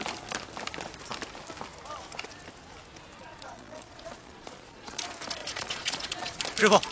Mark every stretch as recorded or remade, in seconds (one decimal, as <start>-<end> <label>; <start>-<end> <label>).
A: 0.0-3.2 recorded; 3.2-5.0 remade; 5.0-5.4 recorded; 5.4-6.4 remade; 6.4-6.9 recorded